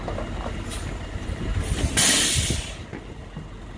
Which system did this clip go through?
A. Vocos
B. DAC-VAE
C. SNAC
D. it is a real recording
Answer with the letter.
D